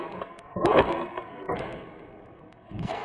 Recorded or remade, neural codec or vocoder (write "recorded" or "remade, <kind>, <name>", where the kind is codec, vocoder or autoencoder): remade, codec, SNAC